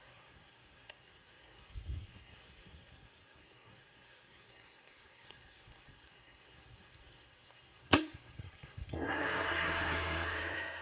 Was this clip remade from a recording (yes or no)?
yes